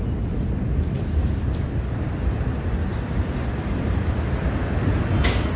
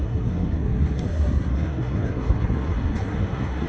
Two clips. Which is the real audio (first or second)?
first